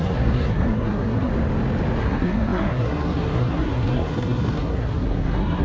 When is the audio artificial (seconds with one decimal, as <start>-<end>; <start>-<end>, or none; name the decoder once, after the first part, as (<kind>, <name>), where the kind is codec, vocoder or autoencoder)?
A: 0.0-1.3 (codec, SNAC); 2.0-5.6